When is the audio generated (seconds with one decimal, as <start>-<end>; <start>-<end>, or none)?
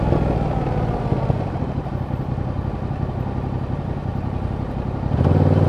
none